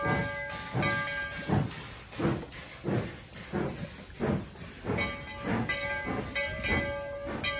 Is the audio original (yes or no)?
yes